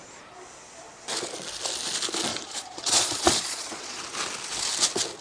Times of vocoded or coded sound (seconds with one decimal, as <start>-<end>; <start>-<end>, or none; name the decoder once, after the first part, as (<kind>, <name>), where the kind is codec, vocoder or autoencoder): 2.3-4.0 (vocoder, Vocos)